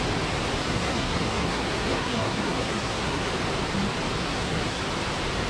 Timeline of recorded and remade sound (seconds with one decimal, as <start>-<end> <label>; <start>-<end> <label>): 0.0-0.6 recorded; 0.6-3.3 remade; 3.3-4.2 recorded; 4.2-4.8 remade; 4.8-5.5 recorded